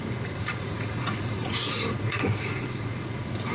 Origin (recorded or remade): remade